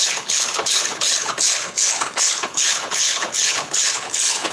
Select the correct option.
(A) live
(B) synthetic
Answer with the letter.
B